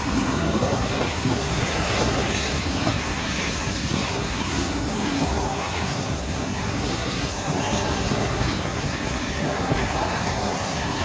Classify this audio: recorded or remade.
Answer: remade